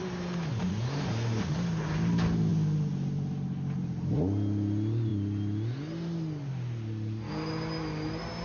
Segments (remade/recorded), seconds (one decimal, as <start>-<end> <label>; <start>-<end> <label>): 0.0-8.4 recorded